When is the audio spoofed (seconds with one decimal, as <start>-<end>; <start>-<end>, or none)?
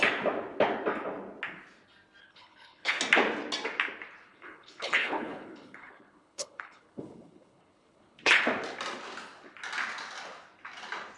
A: 2.2-3.0; 4.3-8.4